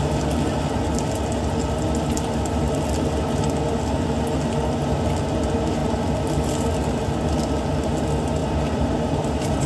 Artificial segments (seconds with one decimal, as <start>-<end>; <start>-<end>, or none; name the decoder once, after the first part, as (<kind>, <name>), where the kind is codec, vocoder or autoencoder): 5.8-6.7 (vocoder, BigVGAN v2); 8.4-9.7